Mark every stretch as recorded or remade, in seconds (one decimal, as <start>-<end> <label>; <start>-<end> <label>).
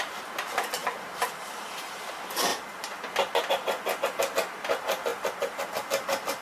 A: 0.0-0.8 recorded; 0.8-2.1 remade; 2.1-6.4 recorded